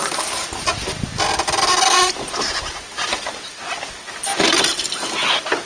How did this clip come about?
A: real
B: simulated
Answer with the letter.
A